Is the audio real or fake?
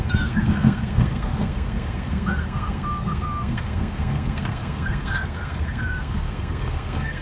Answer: fake